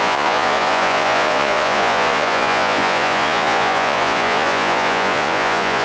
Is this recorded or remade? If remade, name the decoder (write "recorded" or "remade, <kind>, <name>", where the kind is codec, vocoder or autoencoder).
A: remade, vocoder, Vocos